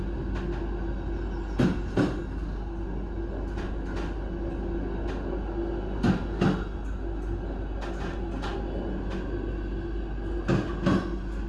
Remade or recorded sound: recorded